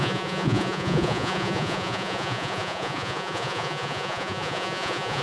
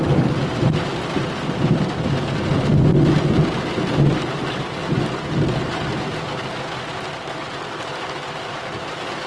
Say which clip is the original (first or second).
second